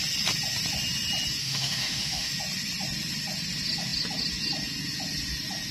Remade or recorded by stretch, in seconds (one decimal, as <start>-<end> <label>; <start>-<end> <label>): 0.0-1.4 recorded; 1.4-2.3 remade; 2.3-5.7 recorded